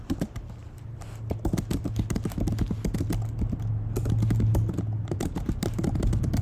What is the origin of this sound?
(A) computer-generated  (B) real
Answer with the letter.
B